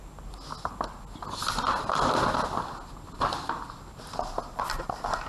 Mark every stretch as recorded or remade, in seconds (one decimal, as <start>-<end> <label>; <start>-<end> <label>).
0.0-5.3 recorded